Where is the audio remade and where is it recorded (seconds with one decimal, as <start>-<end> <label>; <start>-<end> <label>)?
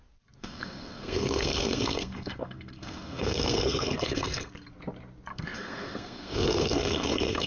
0.0-0.4 recorded; 0.4-4.5 remade; 4.5-5.3 recorded; 5.3-7.5 remade